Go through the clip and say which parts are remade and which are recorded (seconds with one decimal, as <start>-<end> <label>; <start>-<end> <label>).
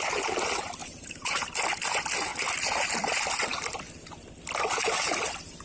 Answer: 0.0-0.8 recorded; 0.8-1.4 remade; 1.4-5.6 recorded